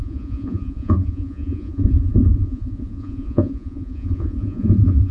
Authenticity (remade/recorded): remade